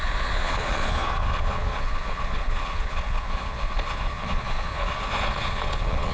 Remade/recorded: remade